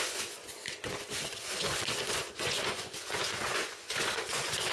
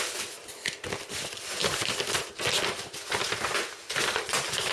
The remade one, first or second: first